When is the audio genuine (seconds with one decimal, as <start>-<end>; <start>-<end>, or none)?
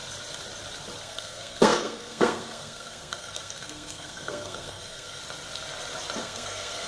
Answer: 0.0-1.0; 5.2-6.2